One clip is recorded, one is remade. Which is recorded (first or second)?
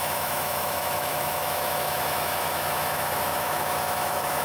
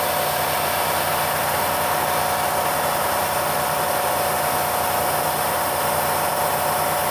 second